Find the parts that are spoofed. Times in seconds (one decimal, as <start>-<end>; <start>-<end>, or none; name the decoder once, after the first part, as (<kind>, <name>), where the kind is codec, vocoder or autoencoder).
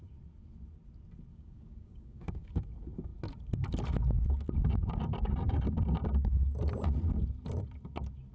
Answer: 1.3-2.5 (codec, DAC)